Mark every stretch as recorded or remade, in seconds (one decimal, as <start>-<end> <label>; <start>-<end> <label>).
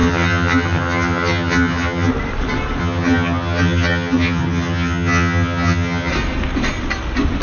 0.0-2.1 remade; 2.1-2.8 recorded; 2.8-6.1 remade; 6.1-7.4 recorded